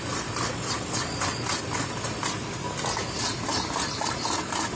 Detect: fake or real real